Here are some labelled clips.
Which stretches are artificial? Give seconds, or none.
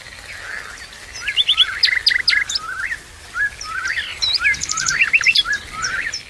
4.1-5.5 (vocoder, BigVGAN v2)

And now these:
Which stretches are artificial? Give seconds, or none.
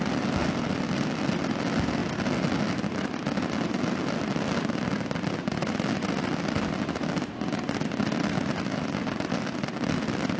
none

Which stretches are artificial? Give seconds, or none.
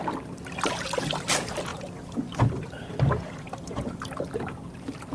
none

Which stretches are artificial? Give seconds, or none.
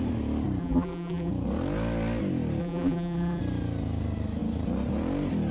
0.6-1.3 (vocoder, BigVGAN v2); 2.6-3.4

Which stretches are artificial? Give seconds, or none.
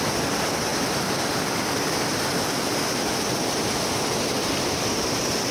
none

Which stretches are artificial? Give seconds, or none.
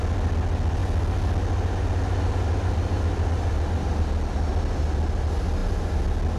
none